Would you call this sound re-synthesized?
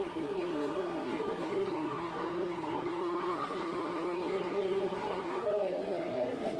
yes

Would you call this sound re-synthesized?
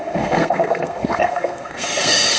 yes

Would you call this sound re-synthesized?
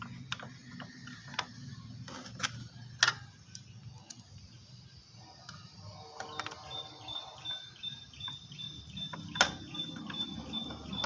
no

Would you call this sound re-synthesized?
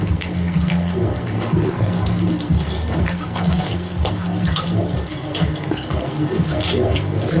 yes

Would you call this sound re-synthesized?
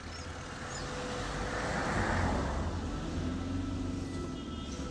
no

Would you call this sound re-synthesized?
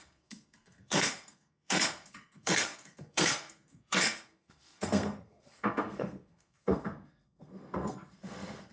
yes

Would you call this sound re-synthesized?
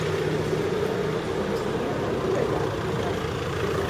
no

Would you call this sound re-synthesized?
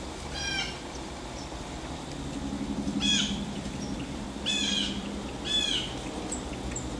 no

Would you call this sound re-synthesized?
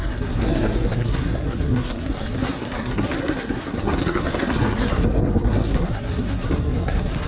yes